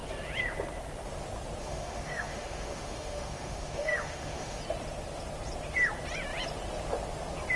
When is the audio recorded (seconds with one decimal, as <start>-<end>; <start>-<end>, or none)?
0.0-1.6; 4.6-7.6